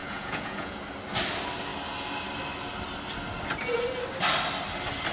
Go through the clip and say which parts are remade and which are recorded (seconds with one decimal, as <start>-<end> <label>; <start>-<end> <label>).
0.0-0.8 remade; 0.8-5.1 recorded